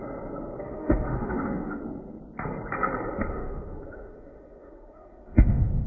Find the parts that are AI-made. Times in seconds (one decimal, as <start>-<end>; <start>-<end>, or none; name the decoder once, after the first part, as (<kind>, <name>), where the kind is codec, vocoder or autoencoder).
0.6-1.8 (autoencoder, DAC-VAE); 3.3-5.9